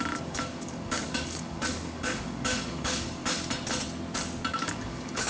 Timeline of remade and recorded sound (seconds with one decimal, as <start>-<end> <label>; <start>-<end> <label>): 0.0-3.2 remade; 3.2-4.5 recorded; 4.5-5.3 remade